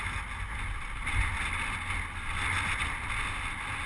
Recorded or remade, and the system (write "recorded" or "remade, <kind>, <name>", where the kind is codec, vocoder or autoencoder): recorded